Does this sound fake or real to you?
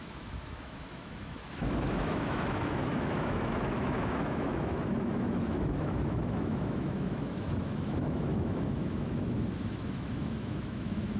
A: fake